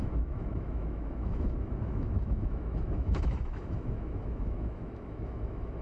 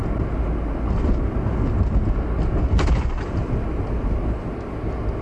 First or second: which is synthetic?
first